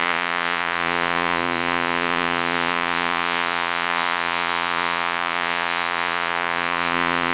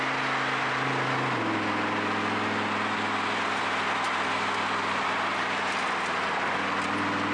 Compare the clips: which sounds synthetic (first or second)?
first